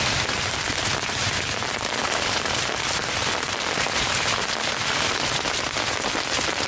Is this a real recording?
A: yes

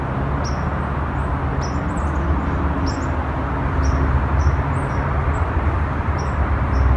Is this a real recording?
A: yes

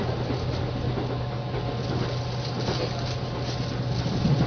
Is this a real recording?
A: yes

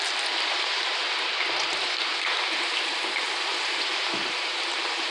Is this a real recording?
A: no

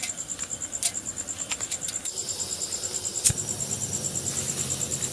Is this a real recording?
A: yes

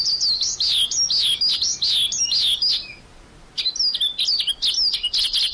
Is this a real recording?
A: yes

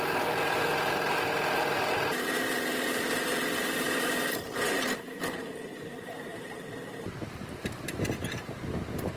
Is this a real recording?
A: no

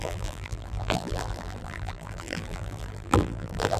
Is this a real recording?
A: no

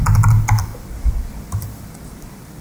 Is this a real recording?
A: yes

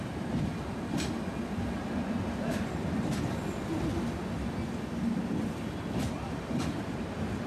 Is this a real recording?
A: yes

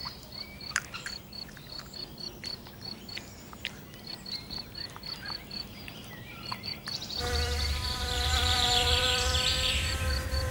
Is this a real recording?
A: no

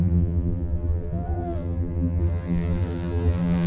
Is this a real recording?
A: no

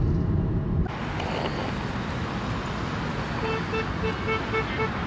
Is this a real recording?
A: yes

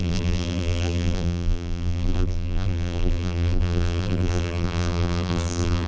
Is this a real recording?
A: no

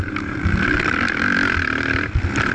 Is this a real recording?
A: no